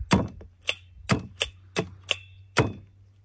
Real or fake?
real